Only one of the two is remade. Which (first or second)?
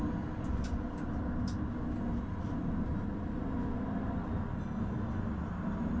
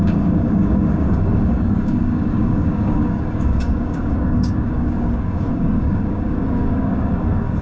second